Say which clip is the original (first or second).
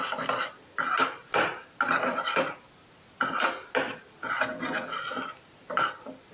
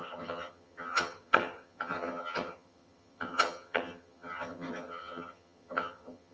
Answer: first